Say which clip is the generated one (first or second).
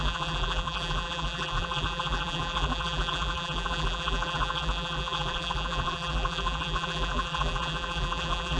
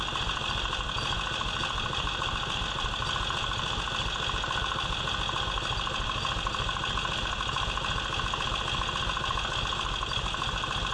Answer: first